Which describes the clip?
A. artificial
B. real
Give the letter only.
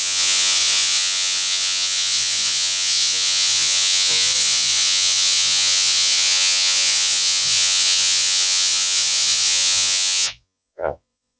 A